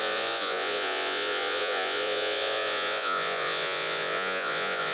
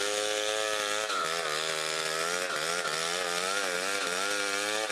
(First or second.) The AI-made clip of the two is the first